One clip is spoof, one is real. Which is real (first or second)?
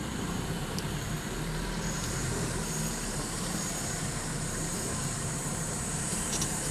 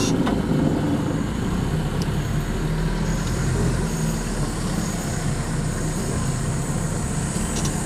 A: second